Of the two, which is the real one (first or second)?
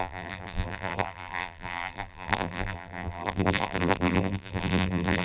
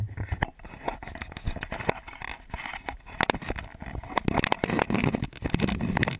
second